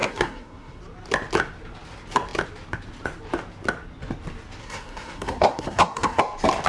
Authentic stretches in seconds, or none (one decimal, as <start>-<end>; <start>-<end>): 0.8-4.6; 6.2-6.7